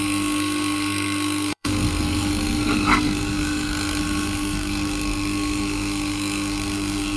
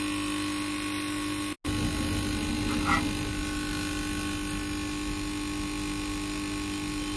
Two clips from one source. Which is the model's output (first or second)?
first